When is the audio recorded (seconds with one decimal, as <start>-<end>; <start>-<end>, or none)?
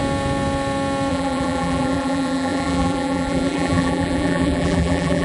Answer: 0.0-1.1